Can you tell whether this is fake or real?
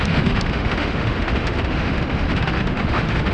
fake